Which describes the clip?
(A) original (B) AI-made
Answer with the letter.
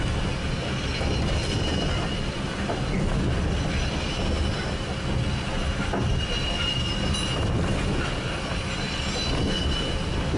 A